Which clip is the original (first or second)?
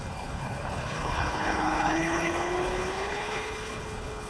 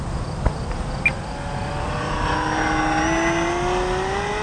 second